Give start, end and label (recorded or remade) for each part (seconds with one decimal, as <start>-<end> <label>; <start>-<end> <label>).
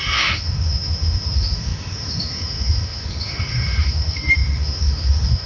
0.0-5.5 remade